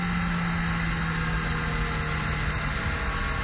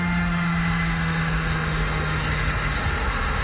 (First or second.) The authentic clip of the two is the first